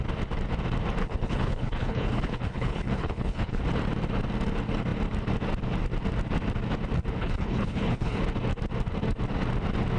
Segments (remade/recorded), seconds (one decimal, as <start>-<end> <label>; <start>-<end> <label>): 0.0-1.0 recorded; 1.0-3.6 remade; 3.6-7.2 recorded; 7.2-8.2 remade; 8.2-10.0 recorded